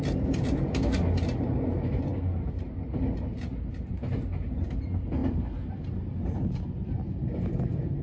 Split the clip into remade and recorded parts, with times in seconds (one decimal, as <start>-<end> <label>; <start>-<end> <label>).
0.0-8.0 recorded